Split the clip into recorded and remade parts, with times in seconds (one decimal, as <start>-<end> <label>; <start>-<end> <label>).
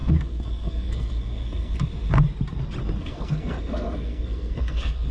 0.0-1.9 remade; 1.9-3.0 recorded; 3.0-5.1 remade